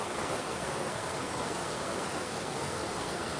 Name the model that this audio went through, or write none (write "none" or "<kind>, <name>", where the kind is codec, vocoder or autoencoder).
codec, SNAC